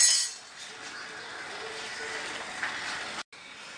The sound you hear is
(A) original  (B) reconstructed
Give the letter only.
A